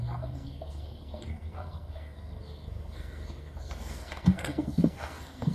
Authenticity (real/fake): fake